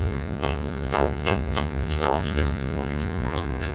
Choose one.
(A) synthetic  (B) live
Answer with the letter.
A